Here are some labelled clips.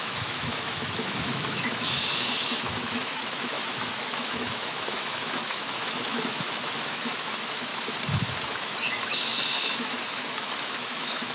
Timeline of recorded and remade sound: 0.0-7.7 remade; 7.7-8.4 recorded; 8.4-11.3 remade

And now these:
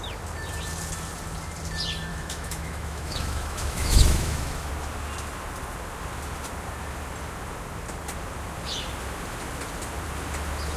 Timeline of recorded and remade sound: 0.0-2.1 recorded; 2.1-4.7 remade; 4.7-10.8 recorded

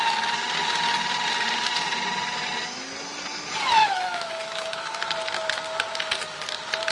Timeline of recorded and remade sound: 0.0-3.8 recorded; 3.8-5.0 remade; 5.0-6.9 recorded

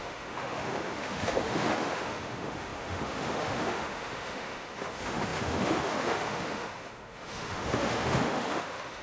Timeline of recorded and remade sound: 0.0-9.0 remade